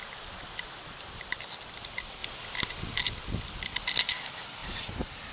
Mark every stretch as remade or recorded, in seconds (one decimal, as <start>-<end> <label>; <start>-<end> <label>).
0.0-4.6 recorded; 4.6-5.3 remade